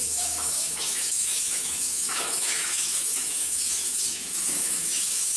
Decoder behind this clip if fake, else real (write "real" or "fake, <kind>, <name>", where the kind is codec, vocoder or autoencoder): fake, autoencoder, DAC-VAE